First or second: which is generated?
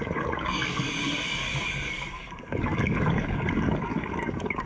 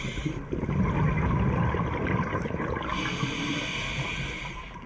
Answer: first